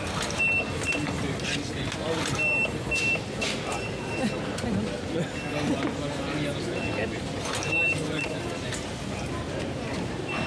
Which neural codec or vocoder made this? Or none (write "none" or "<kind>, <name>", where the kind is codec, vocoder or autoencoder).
none